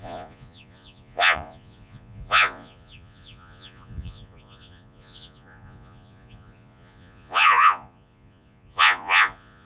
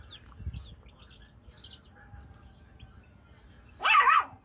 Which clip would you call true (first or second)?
second